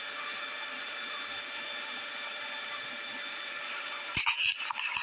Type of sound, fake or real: real